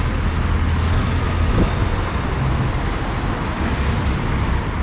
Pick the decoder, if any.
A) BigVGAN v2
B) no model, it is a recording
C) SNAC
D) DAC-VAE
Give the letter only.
B